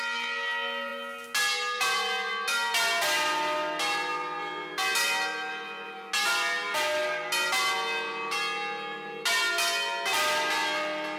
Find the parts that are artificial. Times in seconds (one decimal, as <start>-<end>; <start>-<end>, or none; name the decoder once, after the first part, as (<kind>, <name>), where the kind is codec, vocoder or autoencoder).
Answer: none